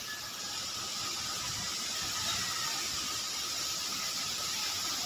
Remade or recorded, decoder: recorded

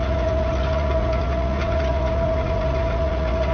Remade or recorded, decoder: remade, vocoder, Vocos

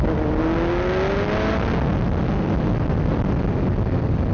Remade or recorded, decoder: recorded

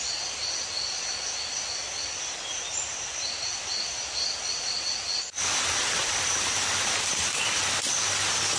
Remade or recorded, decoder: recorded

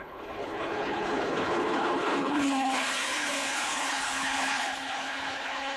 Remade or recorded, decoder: remade, codec, HILCodec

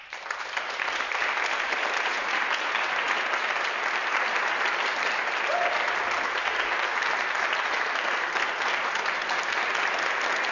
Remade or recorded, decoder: recorded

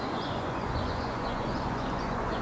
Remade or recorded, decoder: remade, vocoder, Vocos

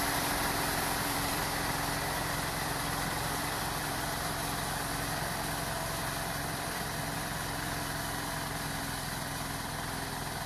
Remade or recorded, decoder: remade, vocoder, BigVGAN v2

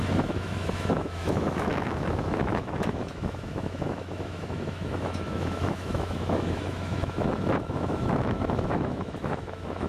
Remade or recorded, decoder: remade, autoencoder, DAC-VAE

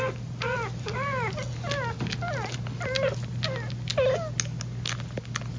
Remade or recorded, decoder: recorded